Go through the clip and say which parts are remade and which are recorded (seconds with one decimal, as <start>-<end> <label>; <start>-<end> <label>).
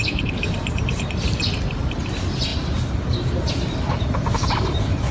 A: 0.0-5.1 recorded